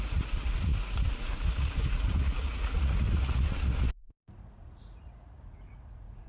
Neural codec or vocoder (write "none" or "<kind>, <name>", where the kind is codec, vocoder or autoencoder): vocoder, Vocos